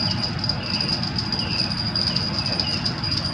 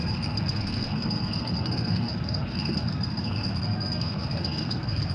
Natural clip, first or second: first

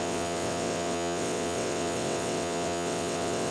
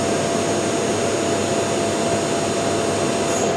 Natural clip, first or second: second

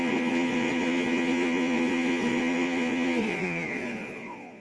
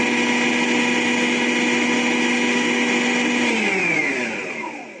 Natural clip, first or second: second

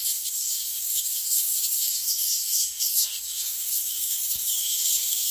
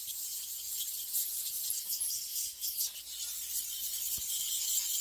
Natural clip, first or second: second